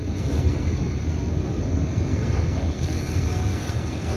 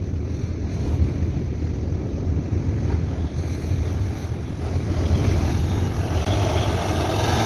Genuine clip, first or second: second